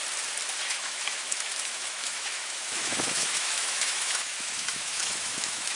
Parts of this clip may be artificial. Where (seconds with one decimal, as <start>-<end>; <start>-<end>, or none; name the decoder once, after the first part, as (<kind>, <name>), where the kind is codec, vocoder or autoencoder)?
0.7-5.8 (autoencoder, DAC-VAE)

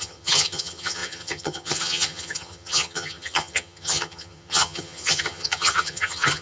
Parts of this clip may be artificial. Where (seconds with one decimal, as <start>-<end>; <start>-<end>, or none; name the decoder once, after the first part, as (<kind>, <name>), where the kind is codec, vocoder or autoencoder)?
0.0-6.4 (vocoder, HiFi-GAN)

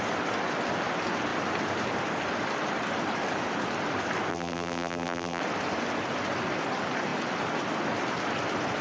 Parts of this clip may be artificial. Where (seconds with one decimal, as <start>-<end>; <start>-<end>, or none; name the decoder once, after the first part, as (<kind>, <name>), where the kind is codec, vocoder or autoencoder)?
4.3-5.4 (vocoder, BigVGAN v2)

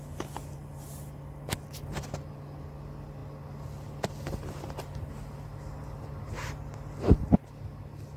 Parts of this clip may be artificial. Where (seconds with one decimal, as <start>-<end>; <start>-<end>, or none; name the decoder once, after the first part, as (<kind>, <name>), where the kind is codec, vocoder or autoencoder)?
none